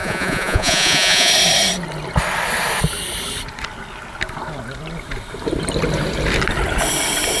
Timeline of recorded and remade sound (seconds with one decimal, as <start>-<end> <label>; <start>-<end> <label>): 0.0-1.3 remade; 1.3-7.4 recorded